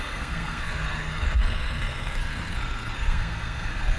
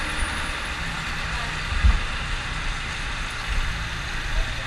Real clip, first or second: second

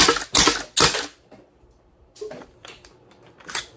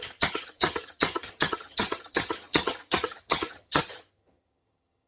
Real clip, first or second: first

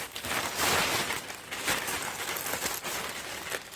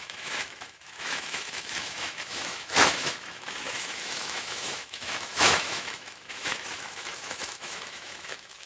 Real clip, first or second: first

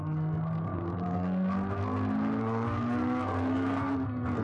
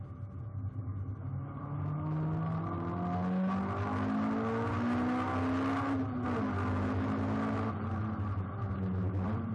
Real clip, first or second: second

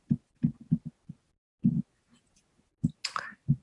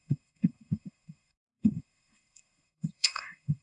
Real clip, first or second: first